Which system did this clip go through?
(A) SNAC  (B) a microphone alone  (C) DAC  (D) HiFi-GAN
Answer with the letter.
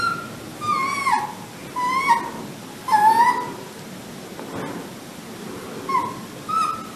B